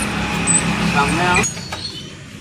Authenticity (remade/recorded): recorded